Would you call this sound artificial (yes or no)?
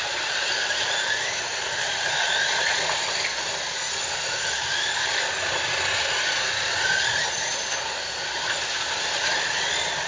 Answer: no